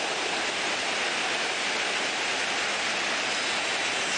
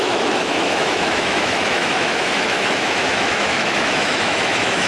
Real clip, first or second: first